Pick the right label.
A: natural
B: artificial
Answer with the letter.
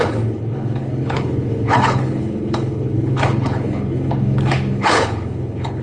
B